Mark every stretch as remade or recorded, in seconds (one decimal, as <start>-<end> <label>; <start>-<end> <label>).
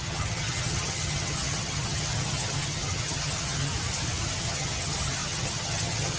0.0-3.7 remade; 3.7-4.4 recorded; 4.4-6.2 remade